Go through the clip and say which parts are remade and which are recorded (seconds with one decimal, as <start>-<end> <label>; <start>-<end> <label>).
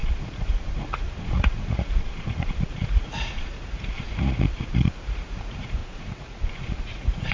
0.0-7.3 remade